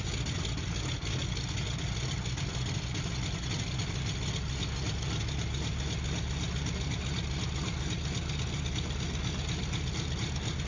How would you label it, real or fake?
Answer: real